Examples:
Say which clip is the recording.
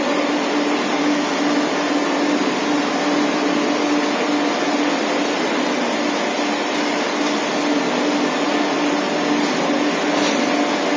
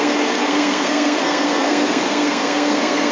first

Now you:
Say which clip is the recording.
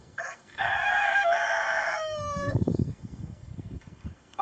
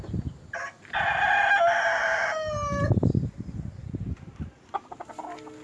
second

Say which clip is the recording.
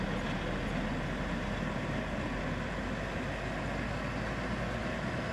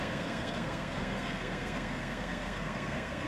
first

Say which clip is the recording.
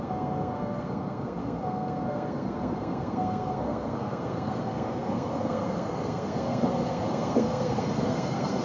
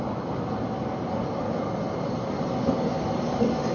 second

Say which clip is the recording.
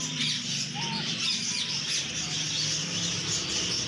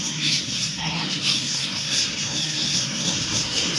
first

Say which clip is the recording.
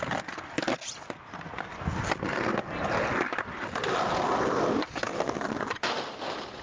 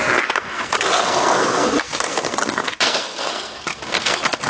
first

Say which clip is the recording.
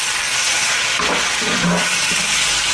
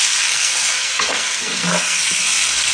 first